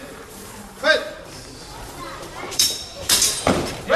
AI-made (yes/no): yes